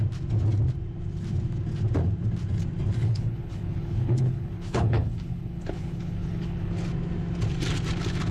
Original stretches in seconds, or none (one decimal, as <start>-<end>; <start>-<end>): 0.0-3.0; 6.7-8.3